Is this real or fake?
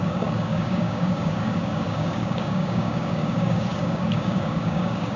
fake